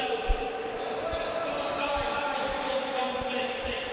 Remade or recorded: recorded